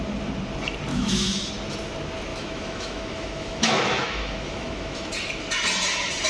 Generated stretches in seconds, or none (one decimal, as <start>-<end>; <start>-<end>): 0.9-1.5; 2.3-5.1